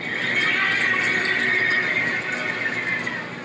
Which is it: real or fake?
real